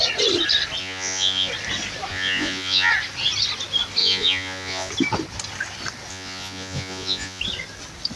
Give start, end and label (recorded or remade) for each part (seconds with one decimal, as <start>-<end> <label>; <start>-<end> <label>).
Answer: 0.0-0.8 recorded; 0.8-1.5 remade; 1.5-2.1 recorded; 2.1-2.9 remade; 2.9-4.0 recorded; 4.0-4.9 remade; 4.9-6.1 recorded; 6.1-7.4 remade; 7.4-8.2 recorded